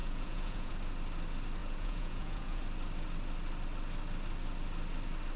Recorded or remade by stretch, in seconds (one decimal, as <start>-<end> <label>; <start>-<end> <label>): 0.0-0.7 remade; 0.7-1.6 recorded; 1.6-2.6 remade; 2.6-5.4 recorded